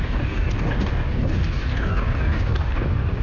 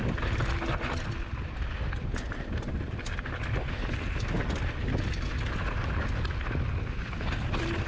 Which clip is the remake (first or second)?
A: first